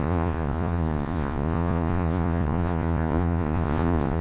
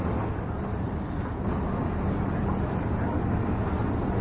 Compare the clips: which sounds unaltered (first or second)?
second